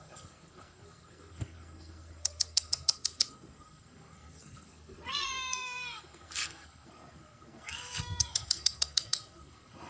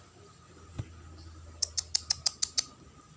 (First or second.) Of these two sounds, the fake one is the first